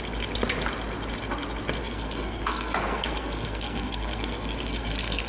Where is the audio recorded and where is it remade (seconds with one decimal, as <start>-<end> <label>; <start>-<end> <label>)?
0.0-1.8 recorded; 1.8-5.3 remade